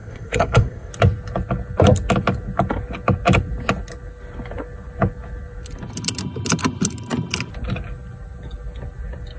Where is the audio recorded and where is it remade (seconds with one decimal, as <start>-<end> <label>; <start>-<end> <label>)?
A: 0.0-0.9 remade; 0.9-9.4 recorded